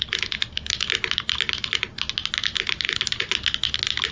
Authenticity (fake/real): real